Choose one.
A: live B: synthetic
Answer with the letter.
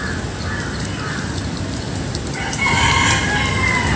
A